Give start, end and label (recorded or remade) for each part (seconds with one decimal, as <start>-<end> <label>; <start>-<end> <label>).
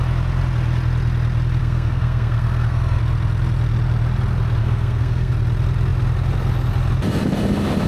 0.0-1.6 recorded; 1.6-3.0 remade; 3.0-4.6 recorded; 4.6-5.3 remade; 5.3-7.9 recorded